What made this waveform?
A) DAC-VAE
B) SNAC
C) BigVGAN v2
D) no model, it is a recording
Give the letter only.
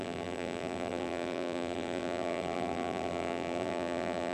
C